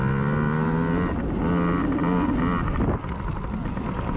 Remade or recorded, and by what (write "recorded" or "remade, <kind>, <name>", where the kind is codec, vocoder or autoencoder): recorded